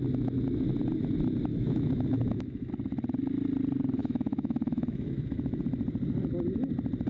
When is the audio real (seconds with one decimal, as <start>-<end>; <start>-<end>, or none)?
0.0-1.5; 2.7-4.0; 5.6-7.1